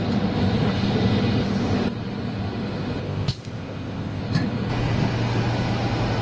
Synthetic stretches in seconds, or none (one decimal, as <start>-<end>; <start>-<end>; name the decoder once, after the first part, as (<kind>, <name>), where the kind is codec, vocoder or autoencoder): 3.0-4.2 (codec, ZipCodec)